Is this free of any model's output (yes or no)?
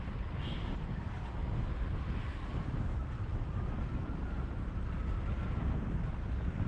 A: yes